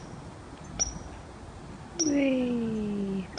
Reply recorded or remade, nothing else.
recorded